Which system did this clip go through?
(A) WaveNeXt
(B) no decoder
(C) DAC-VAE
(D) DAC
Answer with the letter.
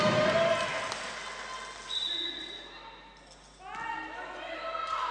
B